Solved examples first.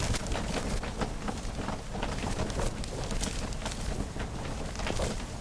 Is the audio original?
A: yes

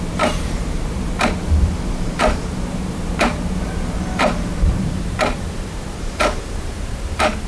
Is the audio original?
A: no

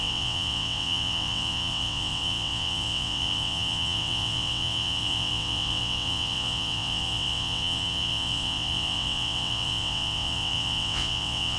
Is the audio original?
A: no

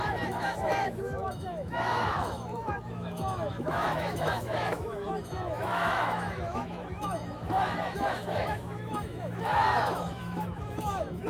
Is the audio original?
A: no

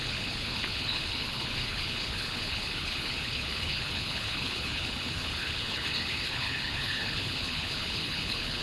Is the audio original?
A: no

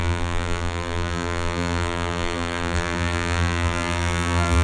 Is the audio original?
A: no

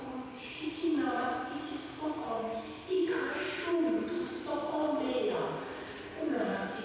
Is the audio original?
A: yes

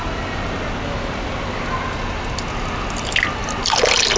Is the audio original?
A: yes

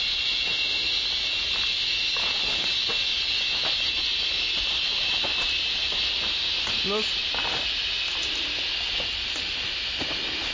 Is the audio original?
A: yes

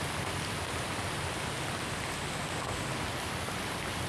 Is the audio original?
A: yes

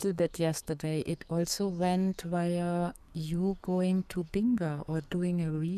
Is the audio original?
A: no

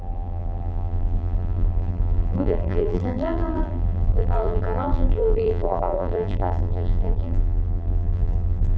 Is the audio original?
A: no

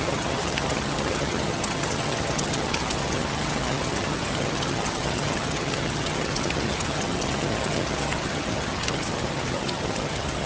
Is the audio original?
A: no